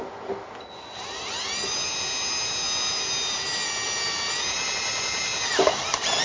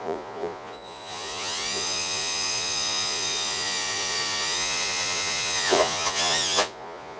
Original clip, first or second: first